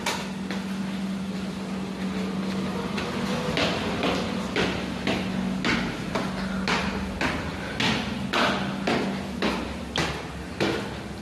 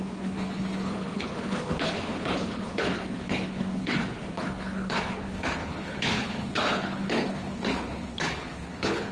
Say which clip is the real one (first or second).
first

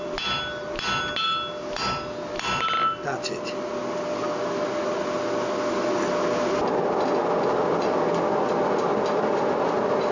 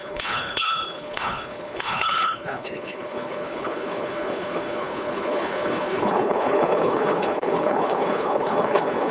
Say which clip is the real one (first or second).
first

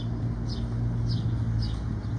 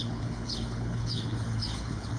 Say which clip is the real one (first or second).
first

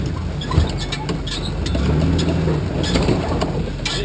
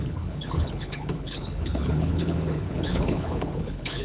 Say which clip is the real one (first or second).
first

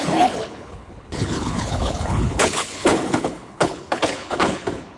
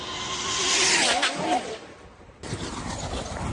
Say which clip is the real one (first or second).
second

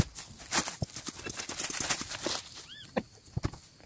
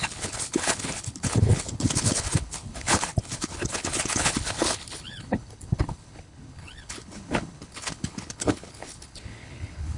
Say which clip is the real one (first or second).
first